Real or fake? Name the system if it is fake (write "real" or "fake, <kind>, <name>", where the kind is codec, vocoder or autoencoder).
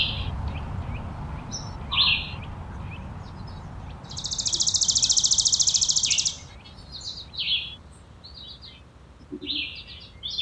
real